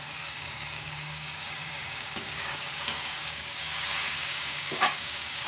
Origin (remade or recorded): remade